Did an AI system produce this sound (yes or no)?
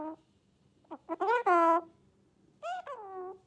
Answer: no